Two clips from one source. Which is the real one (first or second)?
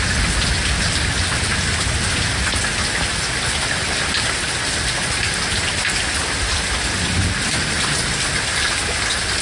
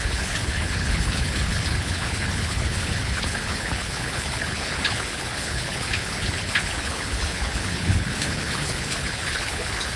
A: first